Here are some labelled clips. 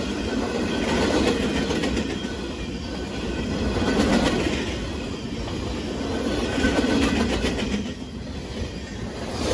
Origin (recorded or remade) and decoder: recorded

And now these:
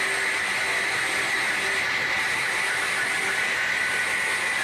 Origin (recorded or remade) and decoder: recorded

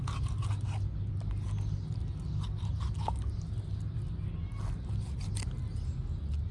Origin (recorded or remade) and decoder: recorded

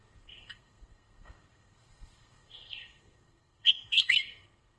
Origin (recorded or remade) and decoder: remade, codec, SNAC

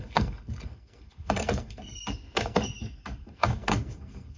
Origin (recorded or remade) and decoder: remade, codec, SNAC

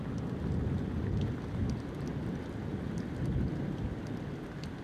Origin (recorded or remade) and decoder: recorded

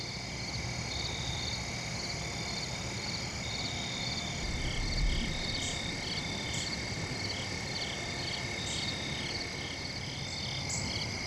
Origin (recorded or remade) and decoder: recorded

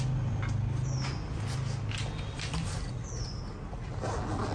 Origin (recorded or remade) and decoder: recorded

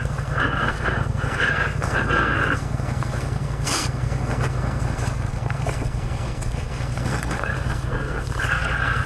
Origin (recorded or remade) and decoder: remade, codec, SNAC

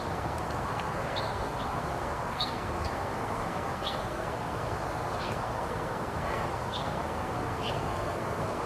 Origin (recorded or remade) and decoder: remade, codec, SNAC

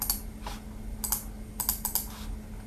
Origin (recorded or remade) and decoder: recorded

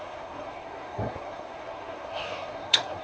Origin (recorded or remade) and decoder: remade, codec, SNAC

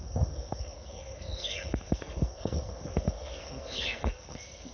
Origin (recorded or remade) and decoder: remade, codec, SNAC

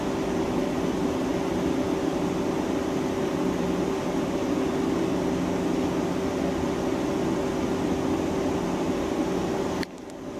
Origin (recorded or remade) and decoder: recorded